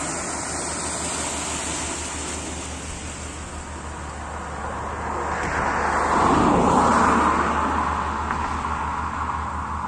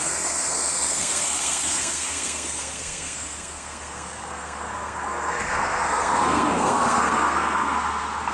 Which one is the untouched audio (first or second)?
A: first